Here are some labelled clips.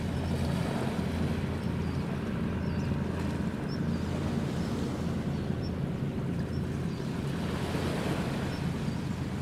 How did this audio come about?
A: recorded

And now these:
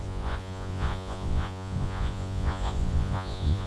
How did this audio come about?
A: remade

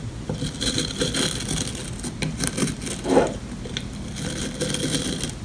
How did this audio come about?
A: recorded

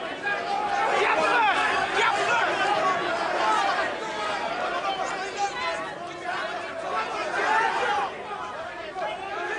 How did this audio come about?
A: recorded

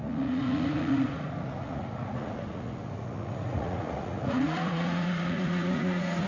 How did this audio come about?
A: remade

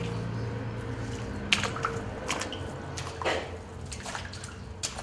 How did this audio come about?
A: recorded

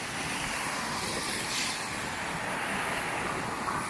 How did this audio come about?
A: recorded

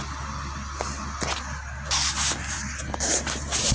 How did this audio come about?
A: recorded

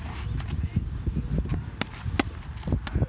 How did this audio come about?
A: recorded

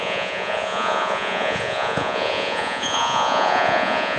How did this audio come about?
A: remade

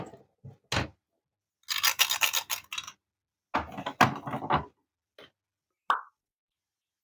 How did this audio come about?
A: recorded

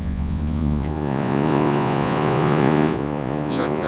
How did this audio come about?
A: remade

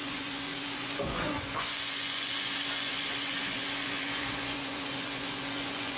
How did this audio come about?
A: remade